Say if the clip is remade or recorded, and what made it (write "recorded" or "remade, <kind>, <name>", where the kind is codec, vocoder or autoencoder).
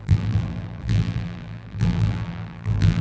remade, vocoder, BigVGAN v2